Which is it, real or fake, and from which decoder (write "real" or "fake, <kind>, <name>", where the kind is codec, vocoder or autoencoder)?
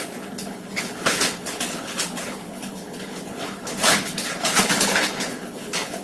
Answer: fake, codec, HILCodec